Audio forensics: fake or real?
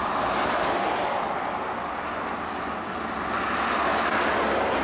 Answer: real